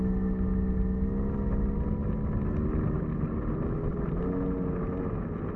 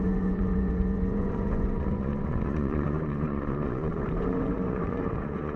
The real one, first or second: first